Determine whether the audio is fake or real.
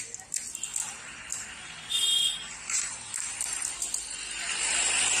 real